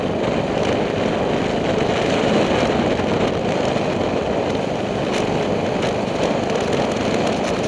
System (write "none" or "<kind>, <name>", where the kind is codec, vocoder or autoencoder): none